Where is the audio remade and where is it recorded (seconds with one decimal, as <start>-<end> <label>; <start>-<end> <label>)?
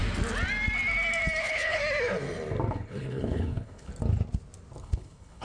0.0-1.4 recorded; 1.4-1.8 remade; 1.8-2.7 recorded; 2.7-3.9 remade; 3.9-4.8 recorded; 4.8-5.4 remade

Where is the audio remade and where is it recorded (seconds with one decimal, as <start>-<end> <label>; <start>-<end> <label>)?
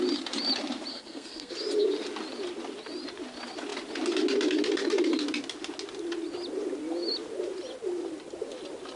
0.0-0.9 recorded; 0.9-1.5 remade; 1.5-9.0 recorded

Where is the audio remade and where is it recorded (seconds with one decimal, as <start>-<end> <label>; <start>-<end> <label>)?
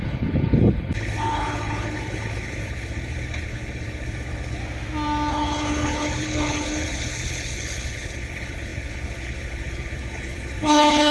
0.0-4.6 remade; 4.6-5.3 recorded; 5.3-11.1 remade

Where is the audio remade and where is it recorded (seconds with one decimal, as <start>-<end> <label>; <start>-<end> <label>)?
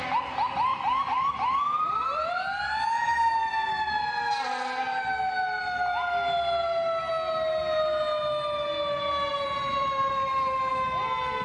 0.0-0.7 recorded; 0.7-2.3 remade; 2.3-9.3 recorded; 9.3-10.7 remade; 10.7-11.4 recorded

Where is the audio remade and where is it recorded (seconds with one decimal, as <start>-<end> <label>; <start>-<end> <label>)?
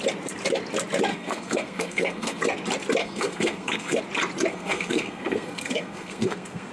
0.0-1.1 recorded; 1.1-2.4 remade; 2.4-3.0 recorded; 3.0-4.0 remade; 4.0-4.5 recorded; 4.5-6.7 remade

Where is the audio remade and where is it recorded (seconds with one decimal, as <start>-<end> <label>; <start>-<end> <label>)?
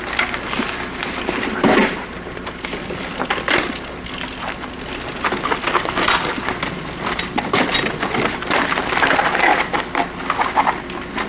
0.0-1.0 recorded; 1.0-2.7 remade; 2.7-11.3 recorded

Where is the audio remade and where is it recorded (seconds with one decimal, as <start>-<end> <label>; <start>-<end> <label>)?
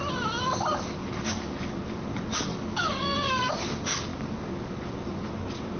0.0-1.0 recorded; 1.0-1.7 remade; 1.7-2.5 recorded; 2.5-3.5 remade; 3.5-5.8 recorded